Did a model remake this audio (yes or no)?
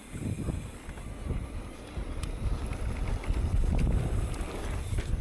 no